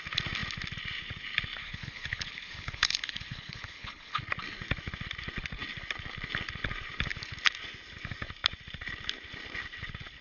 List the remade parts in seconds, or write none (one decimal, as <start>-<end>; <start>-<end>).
1.6-4.2